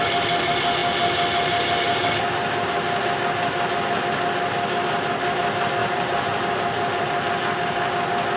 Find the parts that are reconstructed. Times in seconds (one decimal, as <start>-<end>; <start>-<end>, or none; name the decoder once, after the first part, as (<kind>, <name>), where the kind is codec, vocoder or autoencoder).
5.8-7.2 (vocoder, BigVGAN v2)